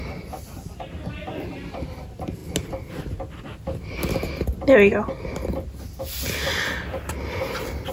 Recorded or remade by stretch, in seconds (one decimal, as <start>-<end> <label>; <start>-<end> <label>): 0.0-7.9 recorded